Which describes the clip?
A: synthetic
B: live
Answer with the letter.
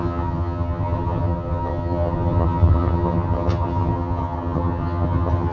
A